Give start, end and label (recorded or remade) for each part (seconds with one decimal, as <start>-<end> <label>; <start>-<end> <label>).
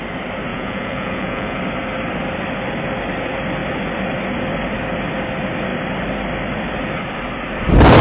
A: 0.0-0.5 recorded; 0.5-1.6 remade; 1.6-8.0 recorded